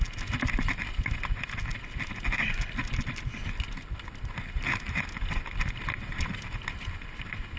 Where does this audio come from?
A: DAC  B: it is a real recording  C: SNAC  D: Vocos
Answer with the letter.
B